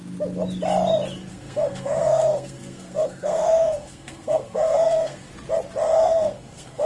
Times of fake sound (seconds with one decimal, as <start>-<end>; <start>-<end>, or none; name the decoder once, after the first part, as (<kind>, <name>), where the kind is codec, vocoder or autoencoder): 1.3-5.3 (codec, SNAC); 6.0-6.9

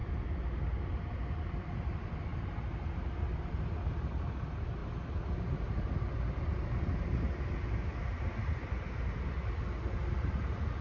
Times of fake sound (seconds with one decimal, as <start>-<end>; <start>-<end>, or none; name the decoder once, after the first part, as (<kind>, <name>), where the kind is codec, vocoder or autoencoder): none

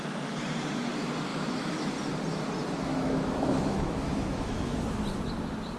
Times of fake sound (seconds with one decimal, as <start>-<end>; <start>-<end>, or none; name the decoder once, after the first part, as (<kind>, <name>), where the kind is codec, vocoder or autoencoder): 1.3-1.9 (autoencoder, DAC-VAE); 2.9-5.0

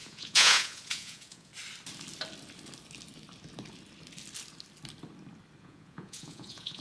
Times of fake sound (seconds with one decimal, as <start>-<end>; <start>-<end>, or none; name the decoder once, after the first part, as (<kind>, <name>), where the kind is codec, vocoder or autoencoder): 0.0-1.5 (vocoder, Vocos); 5.6-6.8

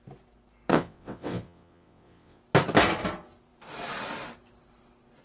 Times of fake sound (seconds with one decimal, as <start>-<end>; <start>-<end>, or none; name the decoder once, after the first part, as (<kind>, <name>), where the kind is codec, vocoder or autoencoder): 0.7-2.4 (vocoder, WaveNeXt)

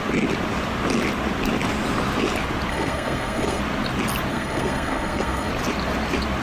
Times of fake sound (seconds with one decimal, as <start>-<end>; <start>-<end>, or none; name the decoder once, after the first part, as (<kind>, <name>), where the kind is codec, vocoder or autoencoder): 2.7-3.6 (codec, SNAC); 4.3-5.5

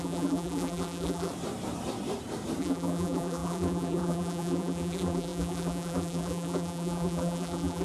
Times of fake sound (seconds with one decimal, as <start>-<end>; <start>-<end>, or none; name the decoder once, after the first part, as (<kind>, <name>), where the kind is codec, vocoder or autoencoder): 0.0-1.3 (vocoder, BigVGAN v2); 2.6-7.8